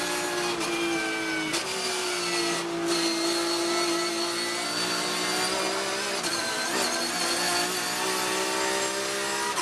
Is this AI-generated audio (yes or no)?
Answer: no